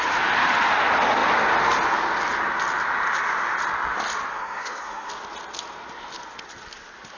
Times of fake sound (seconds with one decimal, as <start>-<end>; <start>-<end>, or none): 4.3-5.1